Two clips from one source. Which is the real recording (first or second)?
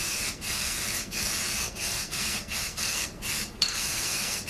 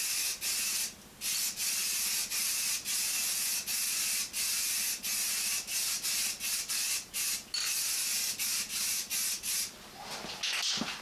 second